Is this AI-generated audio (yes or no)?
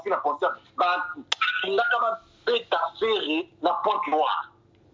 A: no